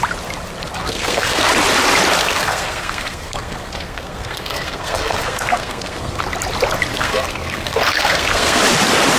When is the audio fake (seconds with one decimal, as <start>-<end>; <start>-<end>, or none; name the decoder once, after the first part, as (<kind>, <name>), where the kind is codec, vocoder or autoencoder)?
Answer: 0.8-1.5 (codec, SNAC); 2.2-6.2; 6.9-8.6